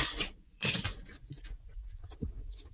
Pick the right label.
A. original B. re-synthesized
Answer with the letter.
B